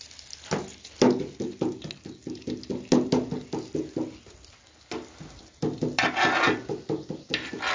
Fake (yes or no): no